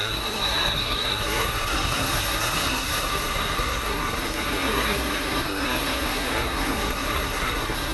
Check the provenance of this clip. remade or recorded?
remade